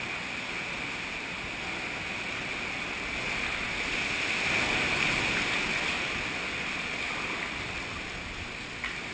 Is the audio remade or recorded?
recorded